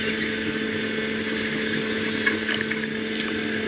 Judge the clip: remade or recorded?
recorded